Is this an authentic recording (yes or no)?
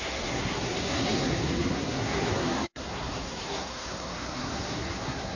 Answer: no